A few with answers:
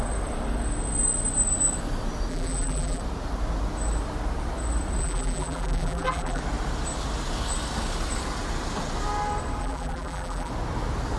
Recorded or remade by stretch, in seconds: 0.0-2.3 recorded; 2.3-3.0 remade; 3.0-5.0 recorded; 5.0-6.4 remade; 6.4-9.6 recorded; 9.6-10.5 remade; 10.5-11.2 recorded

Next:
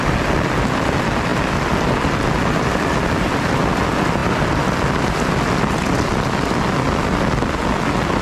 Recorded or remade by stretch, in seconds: 0.0-8.2 recorded

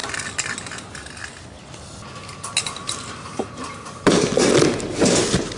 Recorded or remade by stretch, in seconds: 0.0-2.8 recorded; 2.8-3.7 remade; 3.7-5.6 recorded

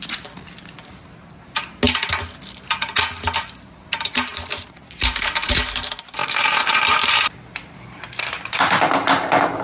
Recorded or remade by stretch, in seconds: 0.0-4.3 recorded; 4.3-5.5 remade; 5.5-6.2 recorded; 6.2-7.1 remade; 7.1-9.6 recorded

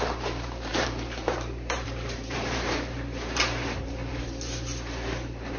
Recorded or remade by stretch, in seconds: 0.0-5.6 remade

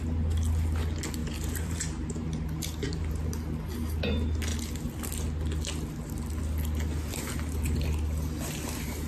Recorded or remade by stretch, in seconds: 0.0-1.2 recorded; 1.2-3.1 remade; 3.1-9.1 recorded